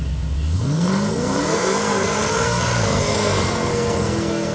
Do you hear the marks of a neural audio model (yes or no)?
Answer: yes